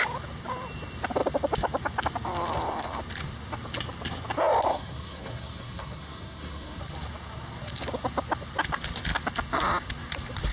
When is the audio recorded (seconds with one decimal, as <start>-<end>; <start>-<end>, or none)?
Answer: 0.0-4.7; 6.8-10.5